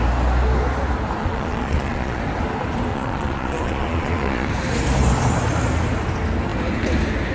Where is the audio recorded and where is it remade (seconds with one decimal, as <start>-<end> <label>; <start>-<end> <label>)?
0.0-1.2 recorded; 1.2-2.2 remade; 2.2-2.9 recorded; 2.9-4.5 remade; 4.5-7.3 recorded